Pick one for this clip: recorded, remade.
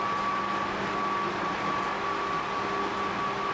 recorded